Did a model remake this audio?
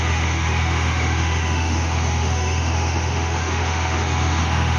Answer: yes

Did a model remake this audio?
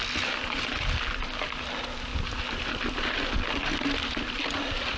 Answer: no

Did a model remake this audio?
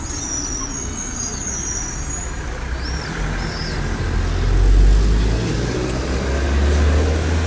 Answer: no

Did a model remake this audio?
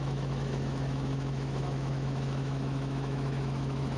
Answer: yes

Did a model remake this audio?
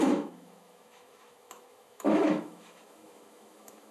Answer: yes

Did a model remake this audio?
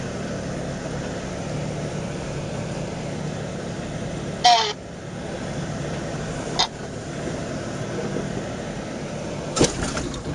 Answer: no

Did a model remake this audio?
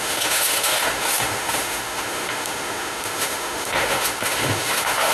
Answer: yes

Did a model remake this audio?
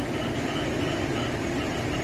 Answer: no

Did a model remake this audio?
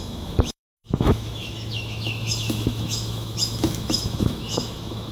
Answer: yes